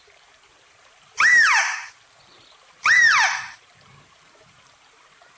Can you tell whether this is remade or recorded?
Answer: remade